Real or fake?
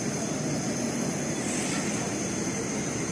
real